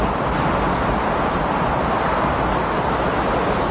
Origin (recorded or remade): recorded